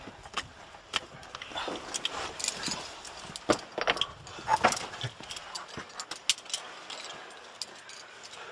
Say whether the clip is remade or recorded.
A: recorded